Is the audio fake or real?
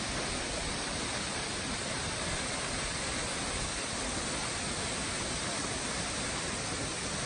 real